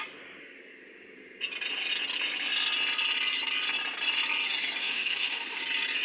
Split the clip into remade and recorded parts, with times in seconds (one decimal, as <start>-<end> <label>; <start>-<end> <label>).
0.0-4.8 recorded; 4.8-5.6 remade; 5.6-6.0 recorded

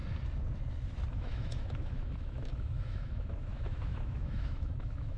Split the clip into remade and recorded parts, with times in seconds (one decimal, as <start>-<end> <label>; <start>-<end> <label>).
0.0-1.1 recorded; 1.1-5.2 remade